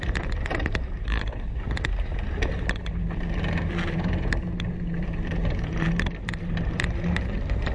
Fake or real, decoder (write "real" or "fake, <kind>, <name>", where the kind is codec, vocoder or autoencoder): fake, vocoder, BigVGAN v2